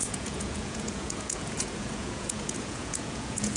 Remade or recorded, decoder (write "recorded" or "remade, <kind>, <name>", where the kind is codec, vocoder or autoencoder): remade, vocoder, Vocos